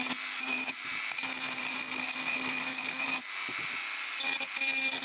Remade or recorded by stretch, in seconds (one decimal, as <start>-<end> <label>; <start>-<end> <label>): 0.0-5.0 recorded

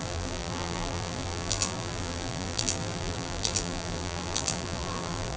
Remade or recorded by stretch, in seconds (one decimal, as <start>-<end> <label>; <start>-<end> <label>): 0.0-5.4 remade

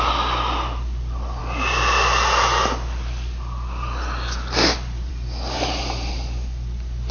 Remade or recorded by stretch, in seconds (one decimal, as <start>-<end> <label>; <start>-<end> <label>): 0.0-7.1 recorded

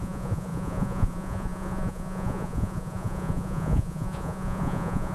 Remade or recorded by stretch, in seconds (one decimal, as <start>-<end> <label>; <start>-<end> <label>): 0.0-5.1 remade

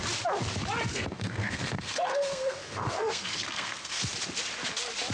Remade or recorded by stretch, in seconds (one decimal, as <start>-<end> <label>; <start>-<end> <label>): 0.0-0.9 recorded; 0.9-4.0 remade; 4.0-5.1 recorded